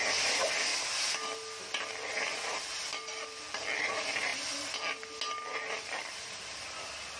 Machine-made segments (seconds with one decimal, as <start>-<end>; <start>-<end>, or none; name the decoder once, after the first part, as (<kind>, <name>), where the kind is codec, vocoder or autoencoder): 2.9-3.9 (vocoder, BigVGAN v2); 4.3-4.8

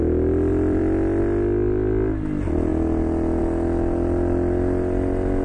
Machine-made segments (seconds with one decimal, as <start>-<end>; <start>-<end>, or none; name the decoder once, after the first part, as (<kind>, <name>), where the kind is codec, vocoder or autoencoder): 0.5-1.2 (vocoder, BigVGAN v2)

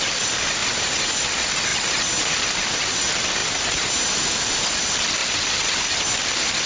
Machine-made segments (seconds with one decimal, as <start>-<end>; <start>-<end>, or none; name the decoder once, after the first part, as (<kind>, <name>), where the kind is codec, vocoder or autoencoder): 0.0-0.6 (vocoder, BigVGAN v2); 1.2-1.7; 2.3-3.4; 4.1-5.2; 6.2-6.7

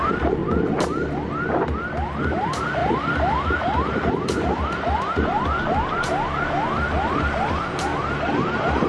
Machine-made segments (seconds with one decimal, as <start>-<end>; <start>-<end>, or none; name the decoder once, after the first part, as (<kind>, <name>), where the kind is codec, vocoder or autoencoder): 0.0-0.4 (vocoder, BigVGAN v2); 2.2-7.9

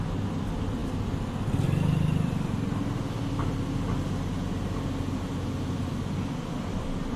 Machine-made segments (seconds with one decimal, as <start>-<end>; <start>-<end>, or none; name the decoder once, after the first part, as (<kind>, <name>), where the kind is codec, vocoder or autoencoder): none

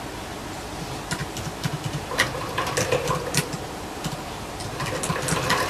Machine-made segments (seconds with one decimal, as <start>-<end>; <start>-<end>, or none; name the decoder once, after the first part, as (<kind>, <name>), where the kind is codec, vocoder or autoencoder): 1.2-4.6 (vocoder, BigVGAN v2)

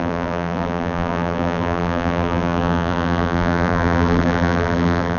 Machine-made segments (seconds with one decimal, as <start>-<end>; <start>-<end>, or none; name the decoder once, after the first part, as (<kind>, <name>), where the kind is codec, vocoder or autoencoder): 0.0-5.2 (vocoder, BigVGAN v2)

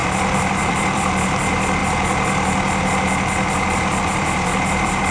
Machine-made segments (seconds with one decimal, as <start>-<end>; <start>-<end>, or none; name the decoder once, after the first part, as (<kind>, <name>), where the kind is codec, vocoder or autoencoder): 0.0-1.8 (vocoder, BigVGAN v2); 4.0-5.1